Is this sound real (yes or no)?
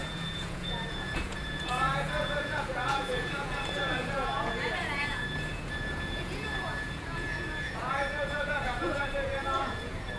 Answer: no